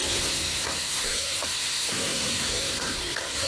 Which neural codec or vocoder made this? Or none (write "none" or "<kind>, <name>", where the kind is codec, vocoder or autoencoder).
codec, SNAC